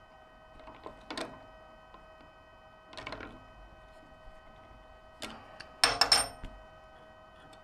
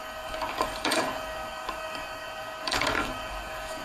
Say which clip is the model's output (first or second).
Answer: second